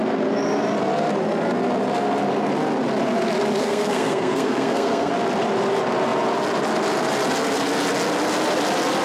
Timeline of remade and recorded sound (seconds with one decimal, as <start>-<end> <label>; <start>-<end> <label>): 0.0-3.6 recorded; 3.6-5.1 remade; 5.1-9.0 recorded